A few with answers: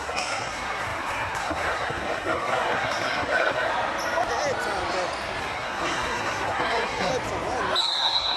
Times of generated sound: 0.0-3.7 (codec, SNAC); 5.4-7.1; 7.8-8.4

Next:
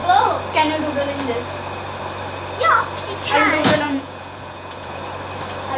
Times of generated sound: 3.4-5.0 (vocoder, Vocos)